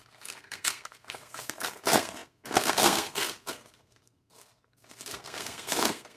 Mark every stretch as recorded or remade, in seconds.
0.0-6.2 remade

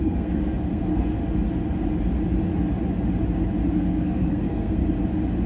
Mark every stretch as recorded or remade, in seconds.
0.0-1.2 remade; 1.2-3.7 recorded; 3.7-4.8 remade; 4.8-5.5 recorded